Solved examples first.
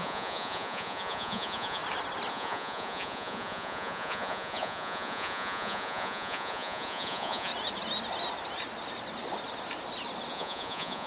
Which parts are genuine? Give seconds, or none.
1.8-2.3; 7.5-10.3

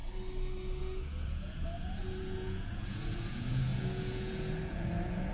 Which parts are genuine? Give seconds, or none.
0.0-0.8